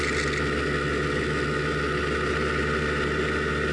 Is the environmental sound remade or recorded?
recorded